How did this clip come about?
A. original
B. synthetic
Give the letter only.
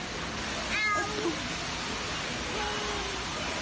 A